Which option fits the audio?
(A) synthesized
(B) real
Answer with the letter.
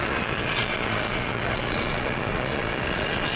A